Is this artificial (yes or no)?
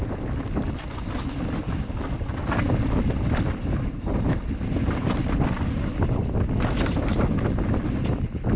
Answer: no